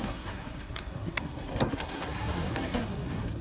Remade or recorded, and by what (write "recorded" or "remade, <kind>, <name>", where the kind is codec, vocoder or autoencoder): remade, codec, SNAC